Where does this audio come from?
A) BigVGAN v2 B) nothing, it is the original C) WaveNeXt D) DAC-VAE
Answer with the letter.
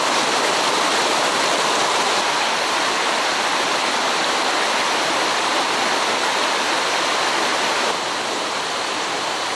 A